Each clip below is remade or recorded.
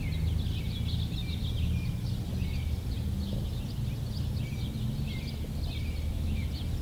recorded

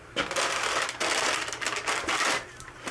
recorded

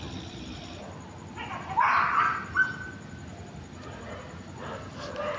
recorded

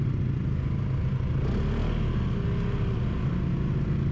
recorded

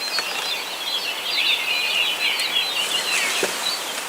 recorded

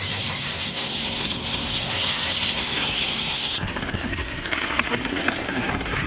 remade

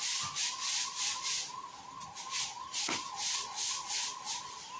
recorded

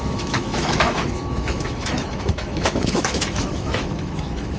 remade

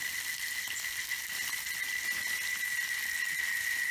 recorded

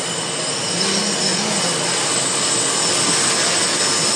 recorded